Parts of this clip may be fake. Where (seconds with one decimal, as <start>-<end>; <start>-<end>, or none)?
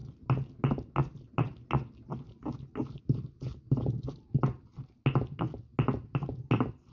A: none